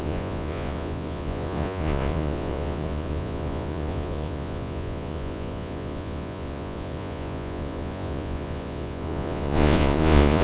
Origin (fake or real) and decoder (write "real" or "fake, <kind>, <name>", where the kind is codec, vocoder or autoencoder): fake, vocoder, Vocos